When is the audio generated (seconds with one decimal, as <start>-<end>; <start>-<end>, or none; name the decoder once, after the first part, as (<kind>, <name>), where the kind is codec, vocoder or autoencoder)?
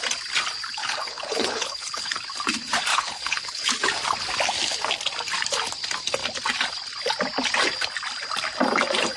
0.8-2.1 (codec, HILCodec); 2.9-3.7